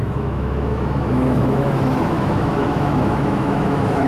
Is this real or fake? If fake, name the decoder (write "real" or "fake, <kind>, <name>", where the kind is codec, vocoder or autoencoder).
fake, autoencoder, DAC-VAE